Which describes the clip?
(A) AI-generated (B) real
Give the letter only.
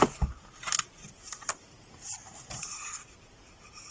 B